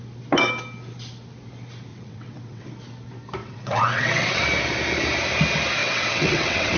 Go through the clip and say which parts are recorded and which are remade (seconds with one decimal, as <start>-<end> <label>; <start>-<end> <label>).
0.0-1.9 recorded; 1.9-2.7 remade; 2.7-3.4 recorded; 3.4-4.4 remade; 4.4-5.8 recorded; 5.8-6.8 remade

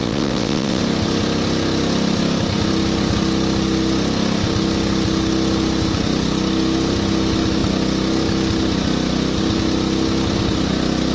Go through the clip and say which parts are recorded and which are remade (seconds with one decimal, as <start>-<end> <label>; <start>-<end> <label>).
0.0-0.8 remade; 0.8-11.1 recorded

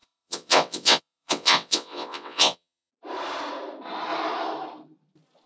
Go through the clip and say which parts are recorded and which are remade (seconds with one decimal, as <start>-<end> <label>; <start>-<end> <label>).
0.0-2.9 remade; 2.9-5.5 recorded

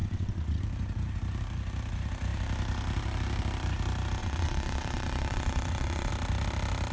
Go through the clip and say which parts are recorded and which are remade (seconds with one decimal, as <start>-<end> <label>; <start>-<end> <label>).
0.0-0.6 remade; 0.6-4.2 recorded; 4.2-6.1 remade; 6.1-6.9 recorded

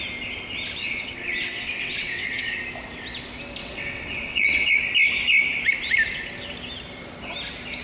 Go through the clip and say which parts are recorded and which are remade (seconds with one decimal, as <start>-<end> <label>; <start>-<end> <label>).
0.0-0.8 recorded; 0.8-2.6 remade; 2.6-3.6 recorded; 3.6-4.7 remade; 4.7-7.8 recorded

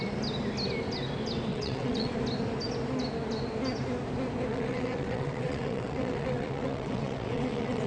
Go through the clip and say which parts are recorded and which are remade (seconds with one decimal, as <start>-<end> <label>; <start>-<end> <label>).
0.0-1.5 recorded; 1.5-2.1 remade; 2.1-4.5 recorded; 4.5-7.9 remade

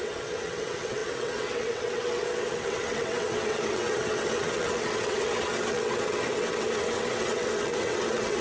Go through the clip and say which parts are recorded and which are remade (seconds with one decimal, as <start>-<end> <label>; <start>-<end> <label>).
0.0-8.4 remade

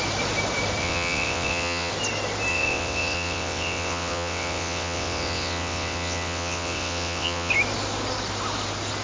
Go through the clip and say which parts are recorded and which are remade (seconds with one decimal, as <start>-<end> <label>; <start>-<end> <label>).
0.0-0.8 recorded; 0.8-1.9 remade; 1.9-2.5 recorded; 2.5-7.5 remade; 7.5-9.0 recorded